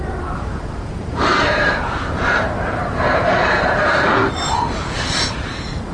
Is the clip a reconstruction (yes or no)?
yes